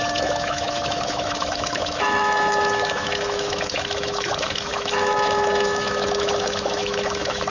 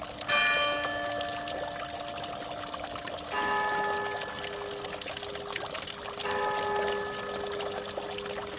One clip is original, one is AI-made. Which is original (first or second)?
second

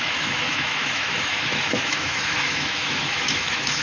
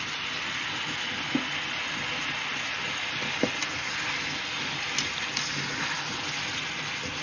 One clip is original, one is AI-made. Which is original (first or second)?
second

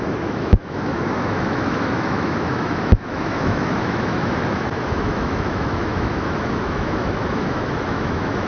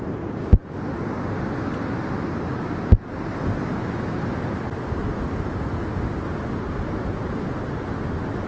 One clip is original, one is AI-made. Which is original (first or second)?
second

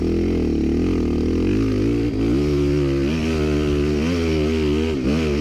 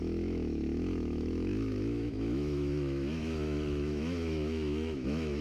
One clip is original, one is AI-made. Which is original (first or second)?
first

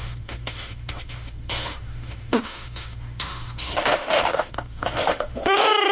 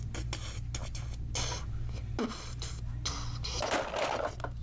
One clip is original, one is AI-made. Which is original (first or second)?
second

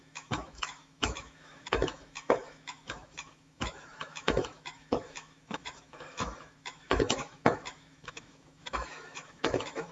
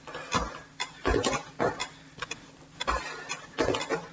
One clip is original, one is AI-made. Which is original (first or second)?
second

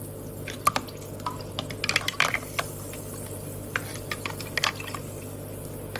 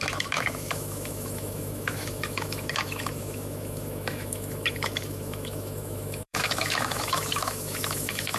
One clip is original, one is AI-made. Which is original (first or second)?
first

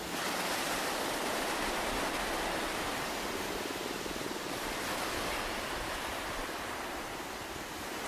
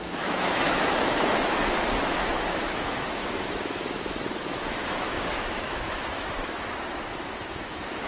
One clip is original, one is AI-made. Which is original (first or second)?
first